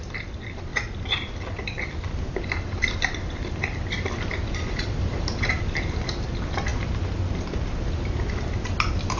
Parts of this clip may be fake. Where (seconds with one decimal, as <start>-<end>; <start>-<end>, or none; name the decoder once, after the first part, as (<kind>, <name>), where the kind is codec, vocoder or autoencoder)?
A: 0.7-5.5 (vocoder, BigVGAN v2)